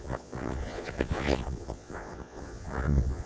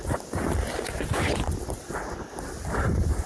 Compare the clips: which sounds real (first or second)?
second